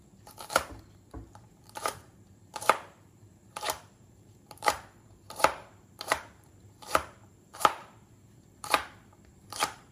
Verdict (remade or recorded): remade